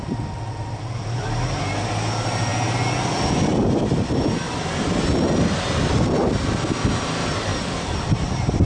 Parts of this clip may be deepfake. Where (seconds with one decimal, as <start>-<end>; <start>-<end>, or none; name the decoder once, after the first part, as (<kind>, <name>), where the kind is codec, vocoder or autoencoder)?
none